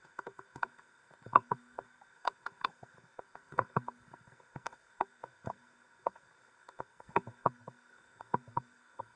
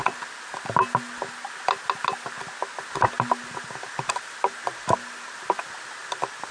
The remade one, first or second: first